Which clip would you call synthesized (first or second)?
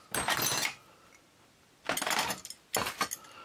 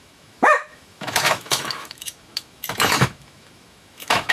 second